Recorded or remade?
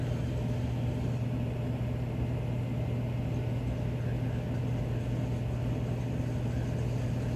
recorded